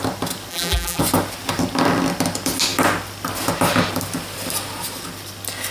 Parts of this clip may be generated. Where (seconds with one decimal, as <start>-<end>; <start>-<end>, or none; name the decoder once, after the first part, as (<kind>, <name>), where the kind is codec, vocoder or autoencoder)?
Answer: 0.5-1.0 (vocoder, BigVGAN v2)